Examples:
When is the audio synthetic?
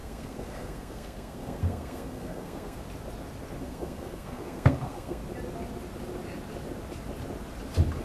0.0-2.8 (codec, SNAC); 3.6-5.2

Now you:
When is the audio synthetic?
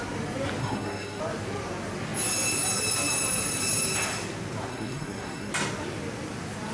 0.6-1.2 (codec, SNAC); 4.7-5.5